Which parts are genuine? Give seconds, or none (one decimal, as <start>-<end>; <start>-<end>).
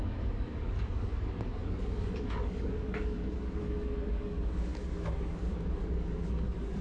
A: none